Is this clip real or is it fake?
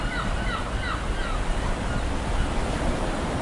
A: real